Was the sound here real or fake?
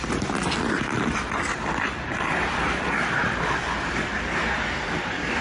fake